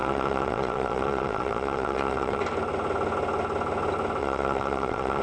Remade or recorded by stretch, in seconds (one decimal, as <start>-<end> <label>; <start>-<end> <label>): 0.0-2.4 remade; 2.4-4.2 recorded; 4.2-5.2 remade